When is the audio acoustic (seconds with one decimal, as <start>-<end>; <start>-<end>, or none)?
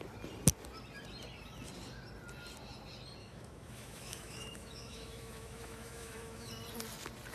0.0-3.2; 6.5-7.3